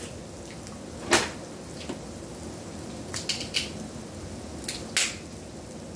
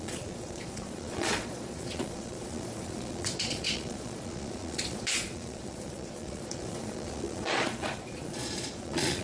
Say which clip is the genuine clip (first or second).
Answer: first